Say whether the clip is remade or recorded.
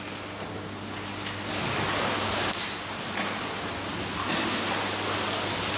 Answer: recorded